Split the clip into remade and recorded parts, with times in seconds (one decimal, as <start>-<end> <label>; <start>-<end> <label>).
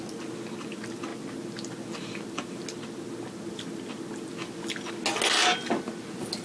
0.0-6.4 recorded